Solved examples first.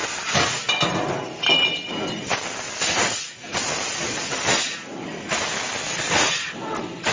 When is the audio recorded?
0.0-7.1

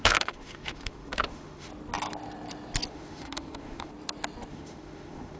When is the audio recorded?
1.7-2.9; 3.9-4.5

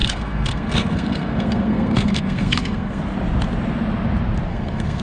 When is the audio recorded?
3.0-4.5